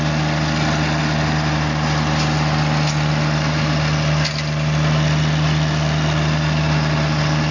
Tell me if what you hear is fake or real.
real